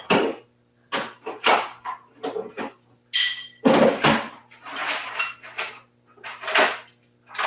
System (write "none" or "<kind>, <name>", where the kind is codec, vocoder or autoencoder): none